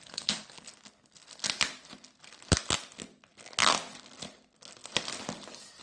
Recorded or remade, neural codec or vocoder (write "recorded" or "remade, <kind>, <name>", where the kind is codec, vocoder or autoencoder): recorded